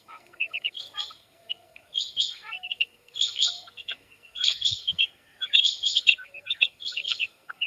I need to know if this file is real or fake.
fake